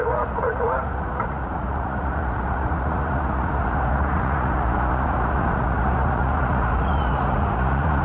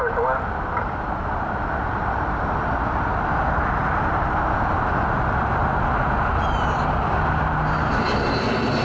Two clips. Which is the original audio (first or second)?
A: second